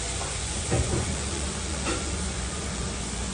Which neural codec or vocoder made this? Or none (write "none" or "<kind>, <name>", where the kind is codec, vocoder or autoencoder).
vocoder, Vocos